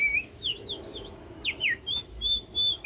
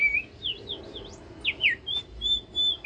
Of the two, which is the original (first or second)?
second